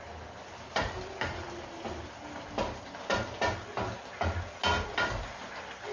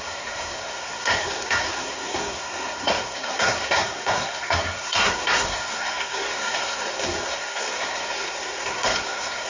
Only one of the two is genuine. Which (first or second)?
first